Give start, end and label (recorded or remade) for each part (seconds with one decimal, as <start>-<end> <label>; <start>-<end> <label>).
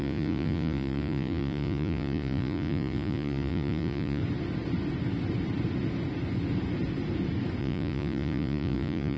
0.0-4.2 remade; 4.2-7.6 recorded; 7.6-9.2 remade